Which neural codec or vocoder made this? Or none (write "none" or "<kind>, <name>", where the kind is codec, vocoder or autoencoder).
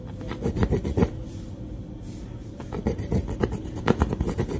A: none